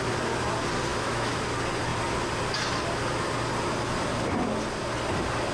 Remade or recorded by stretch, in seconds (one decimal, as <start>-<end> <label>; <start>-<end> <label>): 0.0-0.9 recorded; 0.9-1.4 remade; 1.4-5.5 recorded